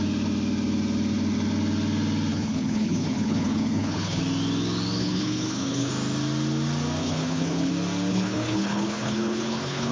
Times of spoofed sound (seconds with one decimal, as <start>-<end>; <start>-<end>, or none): 2.3-4.2; 5.0-5.9; 7.0-7.7; 8.1-9.9